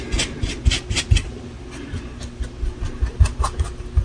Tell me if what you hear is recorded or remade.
recorded